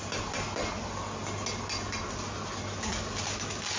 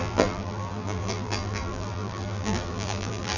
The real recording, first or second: first